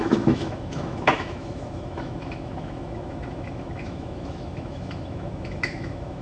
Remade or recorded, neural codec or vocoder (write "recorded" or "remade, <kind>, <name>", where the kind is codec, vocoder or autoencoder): remade, autoencoder, DAC-VAE